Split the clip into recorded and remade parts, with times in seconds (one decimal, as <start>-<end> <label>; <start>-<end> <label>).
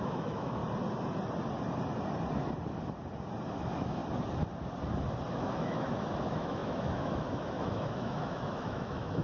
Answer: 0.0-0.6 remade; 0.6-3.5 recorded; 3.5-4.0 remade; 4.0-5.3 recorded; 5.3-9.2 remade